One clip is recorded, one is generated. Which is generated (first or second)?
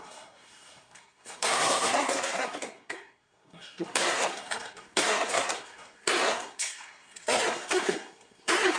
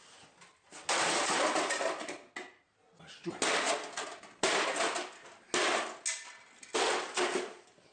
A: first